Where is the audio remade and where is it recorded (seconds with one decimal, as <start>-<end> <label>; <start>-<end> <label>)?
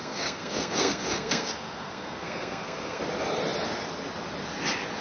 0.0-3.0 remade; 3.0-5.0 recorded